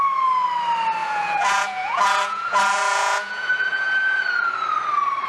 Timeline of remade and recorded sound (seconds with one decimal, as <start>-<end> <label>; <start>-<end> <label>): 0.0-1.0 recorded; 1.0-4.2 remade; 4.2-5.3 recorded